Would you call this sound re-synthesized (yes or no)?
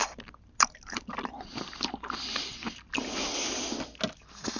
no